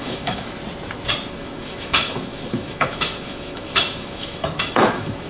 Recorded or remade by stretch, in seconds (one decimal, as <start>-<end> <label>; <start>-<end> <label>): 0.0-0.6 remade; 0.6-1.3 recorded; 1.3-5.3 remade